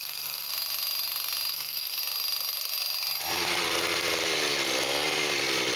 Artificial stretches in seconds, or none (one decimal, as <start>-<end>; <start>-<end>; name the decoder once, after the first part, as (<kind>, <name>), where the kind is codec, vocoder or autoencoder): 0.0-0.5 (codec, SNAC); 1.5-2.0